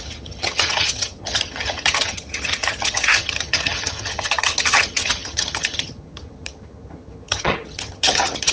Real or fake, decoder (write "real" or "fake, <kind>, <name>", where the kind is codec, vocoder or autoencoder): fake, vocoder, HiFi-GAN